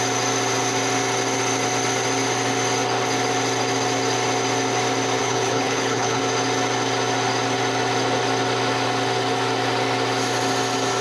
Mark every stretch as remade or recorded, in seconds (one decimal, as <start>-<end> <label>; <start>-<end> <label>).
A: 0.0-5.2 recorded; 5.2-6.2 remade; 6.2-11.0 recorded